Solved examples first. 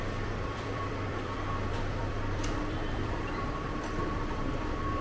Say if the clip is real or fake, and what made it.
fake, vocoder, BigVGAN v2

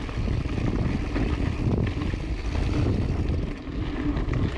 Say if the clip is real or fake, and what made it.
real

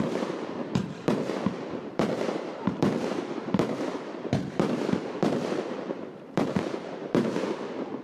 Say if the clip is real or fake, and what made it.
fake, vocoder, BigVGAN v2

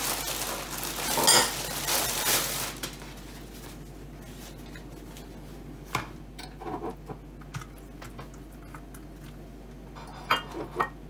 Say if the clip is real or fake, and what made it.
real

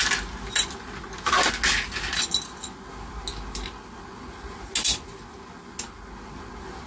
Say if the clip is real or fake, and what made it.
real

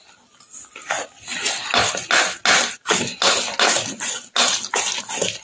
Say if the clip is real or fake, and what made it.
real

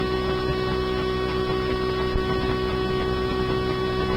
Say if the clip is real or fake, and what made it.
real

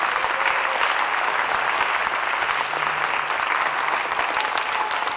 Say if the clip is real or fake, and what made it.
real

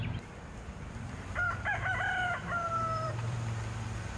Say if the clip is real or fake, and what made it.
fake, vocoder, BigVGAN v2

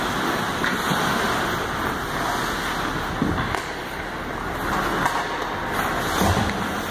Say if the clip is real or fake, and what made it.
real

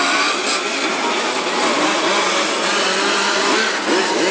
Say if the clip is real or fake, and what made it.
real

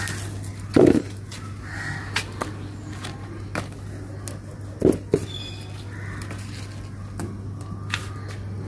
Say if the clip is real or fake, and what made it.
real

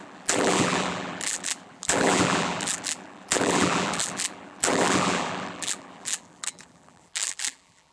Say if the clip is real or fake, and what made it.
fake, vocoder, BigVGAN v2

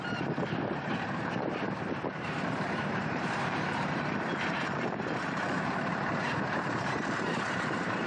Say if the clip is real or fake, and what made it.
fake, vocoder, BigVGAN v2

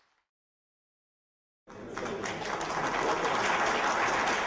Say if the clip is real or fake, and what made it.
real